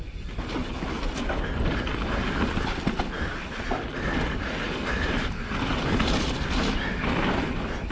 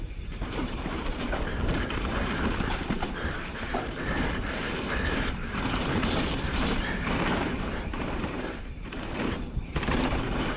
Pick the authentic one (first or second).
first